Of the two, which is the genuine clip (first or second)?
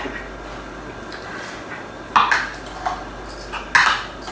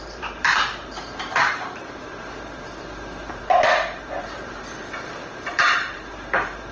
first